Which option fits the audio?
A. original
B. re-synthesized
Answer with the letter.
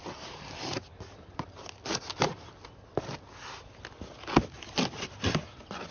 A